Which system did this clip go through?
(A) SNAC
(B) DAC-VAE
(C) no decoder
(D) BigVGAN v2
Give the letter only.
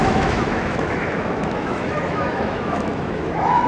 B